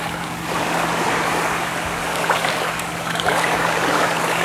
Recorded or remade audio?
remade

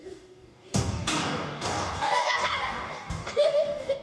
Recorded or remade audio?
remade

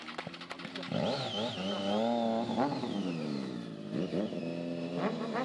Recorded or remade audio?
recorded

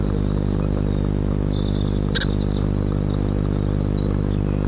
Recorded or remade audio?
recorded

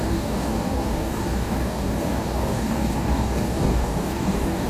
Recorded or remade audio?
remade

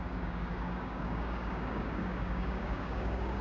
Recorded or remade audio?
remade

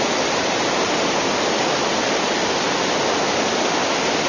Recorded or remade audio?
recorded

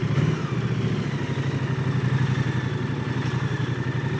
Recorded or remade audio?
recorded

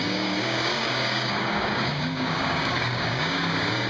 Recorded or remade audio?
remade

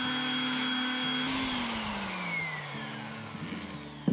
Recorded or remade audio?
recorded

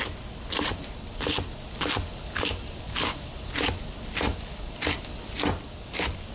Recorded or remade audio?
recorded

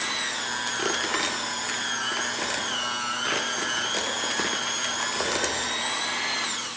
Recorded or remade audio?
recorded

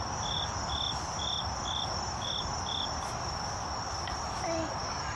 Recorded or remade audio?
recorded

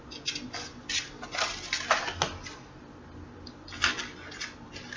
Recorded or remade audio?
recorded